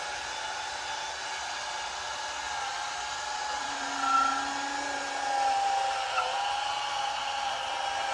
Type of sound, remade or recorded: recorded